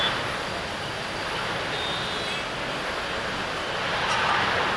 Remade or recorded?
recorded